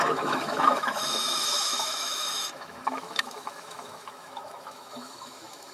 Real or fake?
fake